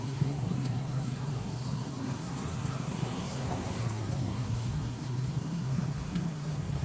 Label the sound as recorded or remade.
remade